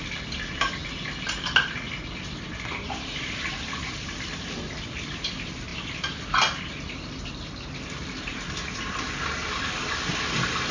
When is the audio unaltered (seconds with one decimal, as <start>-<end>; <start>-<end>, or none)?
0.0-10.7